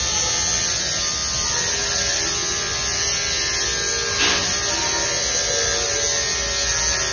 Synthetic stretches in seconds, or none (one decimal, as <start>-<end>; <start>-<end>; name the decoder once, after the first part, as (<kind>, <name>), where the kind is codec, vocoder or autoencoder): none